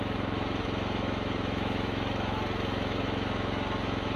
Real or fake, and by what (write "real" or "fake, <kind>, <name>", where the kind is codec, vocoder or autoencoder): fake, autoencoder, DAC-VAE